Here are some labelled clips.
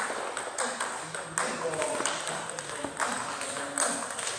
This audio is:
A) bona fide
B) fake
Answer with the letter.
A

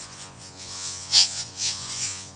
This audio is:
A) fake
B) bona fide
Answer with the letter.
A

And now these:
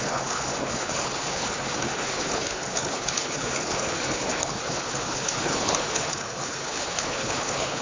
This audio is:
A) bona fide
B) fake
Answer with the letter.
B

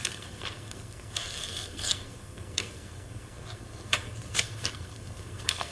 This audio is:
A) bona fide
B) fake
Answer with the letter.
B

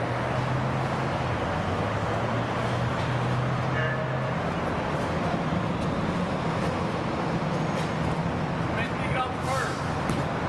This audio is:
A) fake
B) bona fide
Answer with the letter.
B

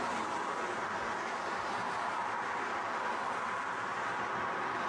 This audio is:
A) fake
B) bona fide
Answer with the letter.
B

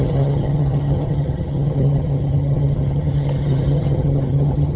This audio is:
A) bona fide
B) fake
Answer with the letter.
B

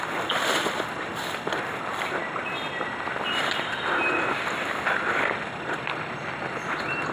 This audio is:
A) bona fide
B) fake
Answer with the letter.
A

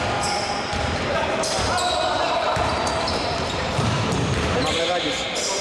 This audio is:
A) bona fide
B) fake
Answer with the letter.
B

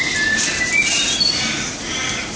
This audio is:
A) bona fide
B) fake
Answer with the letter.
A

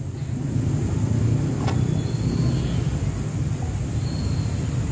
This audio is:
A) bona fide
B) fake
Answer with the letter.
A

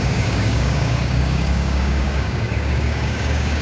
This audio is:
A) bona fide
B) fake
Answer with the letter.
B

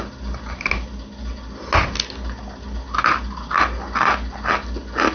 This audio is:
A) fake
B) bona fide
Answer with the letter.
B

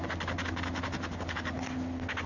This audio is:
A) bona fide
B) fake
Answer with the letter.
A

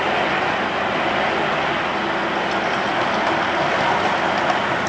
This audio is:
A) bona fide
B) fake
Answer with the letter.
A